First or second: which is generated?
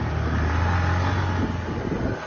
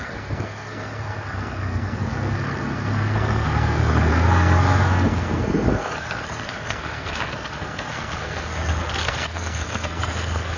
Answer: second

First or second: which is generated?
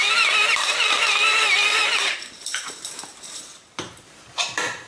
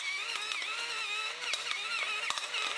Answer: first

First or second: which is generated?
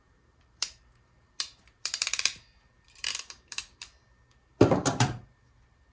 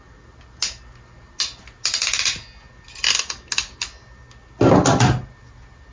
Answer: first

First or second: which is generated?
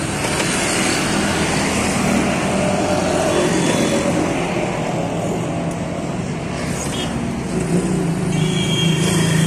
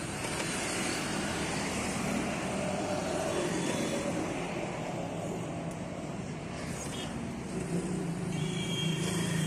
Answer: second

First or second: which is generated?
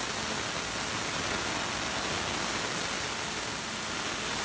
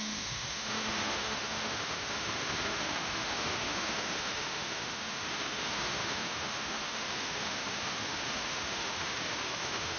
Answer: second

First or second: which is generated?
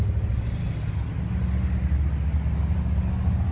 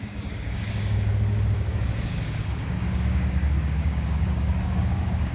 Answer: second